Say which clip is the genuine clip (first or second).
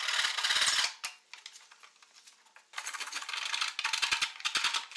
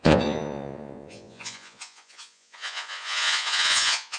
first